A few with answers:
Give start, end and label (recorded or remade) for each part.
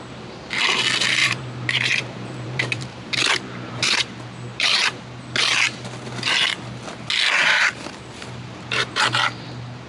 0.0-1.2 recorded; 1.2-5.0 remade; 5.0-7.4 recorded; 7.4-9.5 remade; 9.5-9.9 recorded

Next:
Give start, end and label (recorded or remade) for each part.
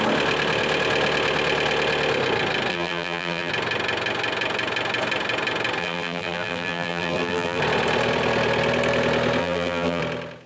0.0-2.7 recorded; 2.7-3.5 remade; 3.5-5.8 recorded; 5.8-7.6 remade; 7.6-9.4 recorded; 9.4-10.0 remade; 10.0-10.5 recorded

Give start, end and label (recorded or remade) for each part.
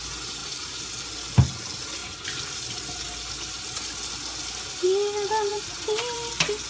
0.0-0.4 recorded; 0.4-0.9 remade; 0.9-5.5 recorded; 5.5-6.3 remade; 6.3-6.7 recorded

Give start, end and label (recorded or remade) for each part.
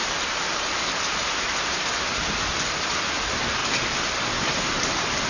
0.0-3.2 recorded; 3.2-5.3 remade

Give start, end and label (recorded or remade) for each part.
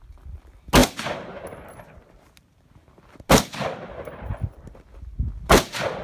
0.0-6.0 recorded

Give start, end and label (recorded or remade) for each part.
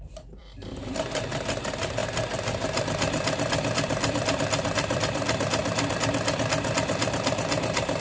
0.0-2.0 remade; 2.0-2.8 recorded; 2.8-5.6 remade; 5.6-6.1 recorded; 6.1-8.0 remade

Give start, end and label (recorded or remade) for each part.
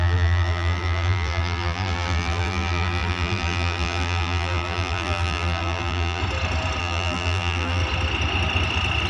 0.0-6.2 remade; 6.2-6.8 recorded; 6.8-7.8 remade; 7.8-9.1 recorded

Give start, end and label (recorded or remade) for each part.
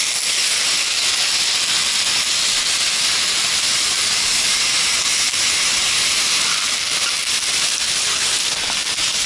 0.0-3.7 recorded; 3.7-6.5 remade; 6.5-9.3 recorded